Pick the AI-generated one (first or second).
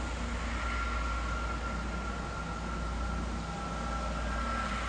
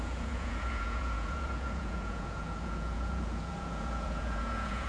second